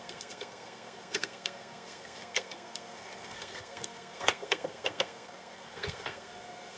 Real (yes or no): no